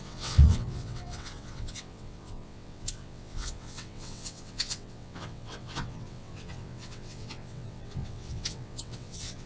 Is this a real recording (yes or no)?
no